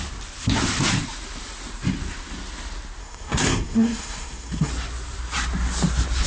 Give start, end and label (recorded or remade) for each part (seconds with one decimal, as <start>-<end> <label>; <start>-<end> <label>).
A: 0.0-3.0 recorded; 3.0-4.7 remade; 4.7-6.3 recorded